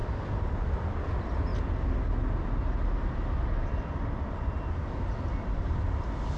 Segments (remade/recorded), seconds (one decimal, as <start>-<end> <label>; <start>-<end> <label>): 0.0-6.4 recorded